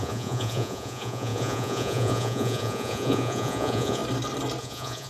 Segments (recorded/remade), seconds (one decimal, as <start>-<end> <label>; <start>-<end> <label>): 0.0-4.0 remade; 4.0-4.6 recorded; 4.6-5.1 remade